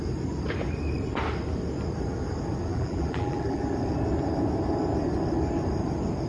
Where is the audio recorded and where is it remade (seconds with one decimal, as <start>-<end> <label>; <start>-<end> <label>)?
0.0-2.7 recorded; 2.7-3.6 remade; 3.6-6.3 recorded